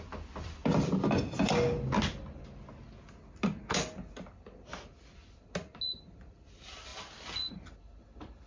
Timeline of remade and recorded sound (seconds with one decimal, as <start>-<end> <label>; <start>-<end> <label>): 0.0-8.5 recorded